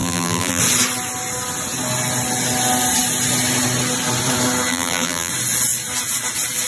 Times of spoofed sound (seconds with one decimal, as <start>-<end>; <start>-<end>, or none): 0.0-0.6; 4.7-5.3